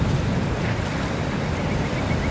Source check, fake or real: real